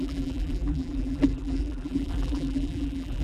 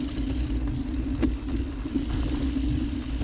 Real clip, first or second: second